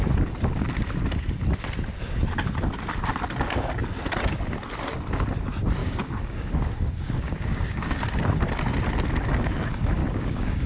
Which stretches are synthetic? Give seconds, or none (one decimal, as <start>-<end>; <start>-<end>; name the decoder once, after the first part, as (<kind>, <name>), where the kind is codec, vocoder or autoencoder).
5.8-8.0 (codec, DAC); 10.0-10.7

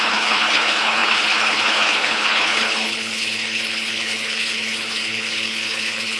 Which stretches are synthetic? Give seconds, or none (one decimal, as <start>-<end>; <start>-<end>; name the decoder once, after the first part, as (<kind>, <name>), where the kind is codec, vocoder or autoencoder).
0.0-6.2 (codec, HILCodec)

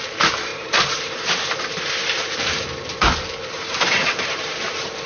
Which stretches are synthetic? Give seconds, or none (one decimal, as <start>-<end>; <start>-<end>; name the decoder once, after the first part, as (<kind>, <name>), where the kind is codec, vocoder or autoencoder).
0.0-5.1 (vocoder, BigVGAN v2)

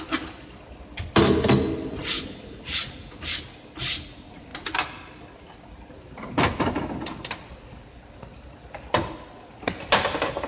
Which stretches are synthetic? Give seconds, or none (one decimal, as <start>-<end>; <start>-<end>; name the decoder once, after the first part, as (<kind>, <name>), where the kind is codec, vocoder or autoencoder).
none

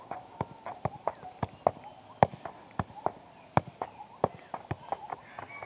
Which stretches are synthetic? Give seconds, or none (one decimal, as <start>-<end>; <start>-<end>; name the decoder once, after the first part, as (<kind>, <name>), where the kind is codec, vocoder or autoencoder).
none

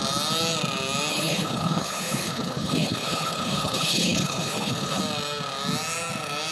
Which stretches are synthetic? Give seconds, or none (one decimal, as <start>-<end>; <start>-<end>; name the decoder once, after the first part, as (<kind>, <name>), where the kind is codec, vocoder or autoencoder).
1.1-5.0 (codec, HILCodec)